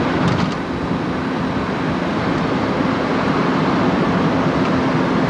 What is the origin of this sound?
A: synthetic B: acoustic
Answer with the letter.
B